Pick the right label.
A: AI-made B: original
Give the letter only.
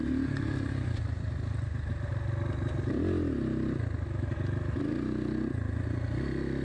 B